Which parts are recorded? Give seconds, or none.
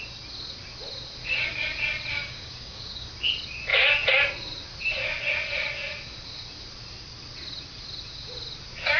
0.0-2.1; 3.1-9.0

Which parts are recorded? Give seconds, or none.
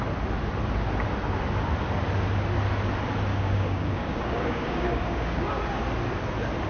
0.0-3.3; 5.6-6.7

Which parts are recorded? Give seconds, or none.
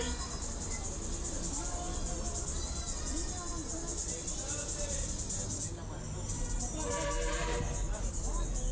0.0-8.7